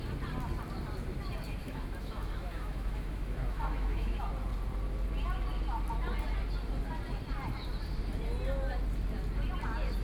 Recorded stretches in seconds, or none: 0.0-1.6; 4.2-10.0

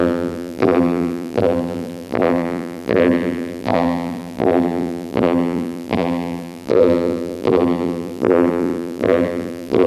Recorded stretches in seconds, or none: none

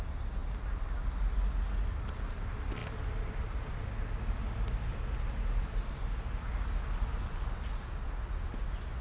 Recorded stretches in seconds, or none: 0.0-9.0

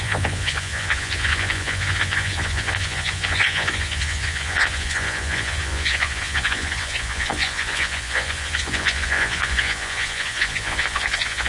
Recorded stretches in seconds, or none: none

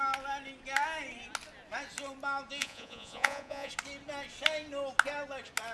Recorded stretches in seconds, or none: 0.0-2.6; 3.7-5.7

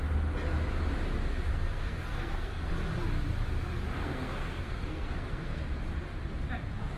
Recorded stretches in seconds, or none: 0.0-1.5; 2.7-4.0; 5.6-7.0